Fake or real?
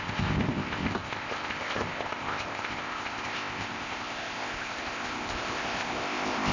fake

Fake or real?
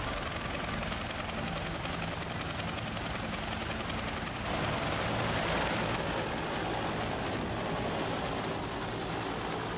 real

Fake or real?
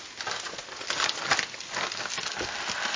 real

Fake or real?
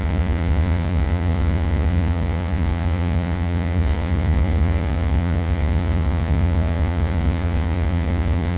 fake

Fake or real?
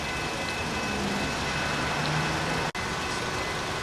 real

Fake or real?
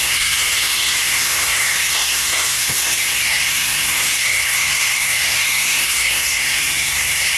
fake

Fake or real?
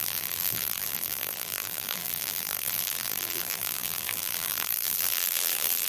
fake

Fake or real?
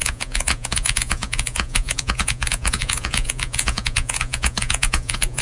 fake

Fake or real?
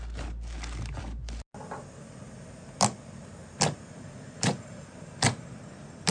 real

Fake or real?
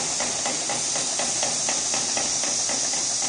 real